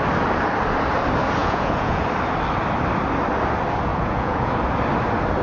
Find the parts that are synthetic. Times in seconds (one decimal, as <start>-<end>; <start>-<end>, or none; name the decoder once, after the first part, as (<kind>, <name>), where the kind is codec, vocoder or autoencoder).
1.4-2.0 (vocoder, Vocos); 3.9-4.5